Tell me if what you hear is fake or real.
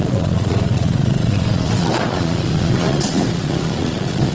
fake